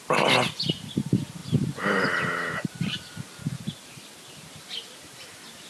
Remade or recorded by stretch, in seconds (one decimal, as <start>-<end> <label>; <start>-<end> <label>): 0.0-5.7 recorded